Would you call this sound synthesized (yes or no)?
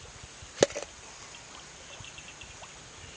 no